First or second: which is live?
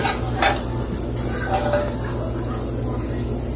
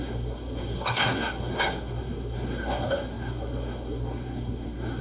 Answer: first